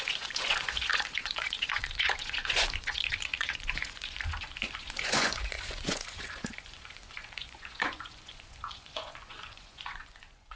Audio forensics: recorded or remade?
remade